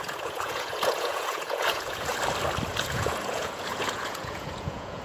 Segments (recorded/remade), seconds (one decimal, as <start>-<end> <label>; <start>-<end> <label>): 0.0-2.1 remade; 2.1-2.8 recorded; 2.8-5.0 remade

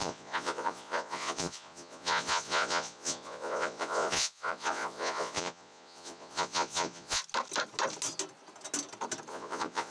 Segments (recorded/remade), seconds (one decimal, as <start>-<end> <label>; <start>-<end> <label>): 0.0-7.2 remade; 7.2-9.3 recorded; 9.3-9.9 remade

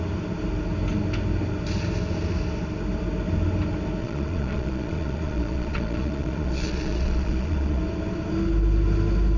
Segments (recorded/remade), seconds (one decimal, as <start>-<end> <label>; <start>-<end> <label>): 0.0-4.0 recorded; 4.0-7.8 remade; 7.8-9.4 recorded

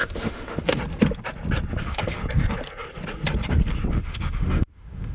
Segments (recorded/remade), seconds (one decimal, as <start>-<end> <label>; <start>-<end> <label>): 0.0-0.8 remade; 0.8-1.8 recorded; 1.8-2.2 remade; 2.2-3.9 recorded; 3.9-5.1 remade

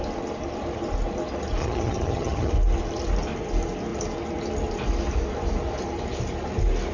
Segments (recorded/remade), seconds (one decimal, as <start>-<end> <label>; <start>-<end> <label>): 0.0-1.6 recorded; 1.6-2.5 remade; 2.5-6.9 recorded

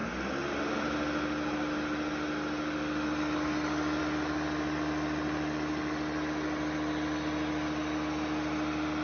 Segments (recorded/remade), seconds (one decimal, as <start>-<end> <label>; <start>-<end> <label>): 0.0-9.0 recorded

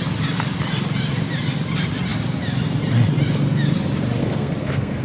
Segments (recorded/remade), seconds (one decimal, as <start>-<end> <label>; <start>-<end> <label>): 0.0-4.2 recorded; 4.2-5.0 remade